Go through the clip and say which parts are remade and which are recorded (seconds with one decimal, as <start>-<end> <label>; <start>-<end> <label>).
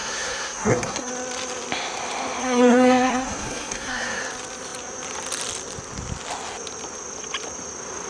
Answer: 0.0-1.1 remade; 1.1-2.4 recorded; 2.4-4.2 remade; 4.2-8.1 recorded